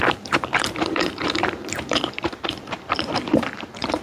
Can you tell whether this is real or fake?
fake